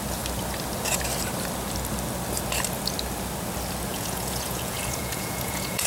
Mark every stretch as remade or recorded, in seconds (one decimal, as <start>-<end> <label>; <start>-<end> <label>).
0.0-3.9 recorded; 3.9-5.9 remade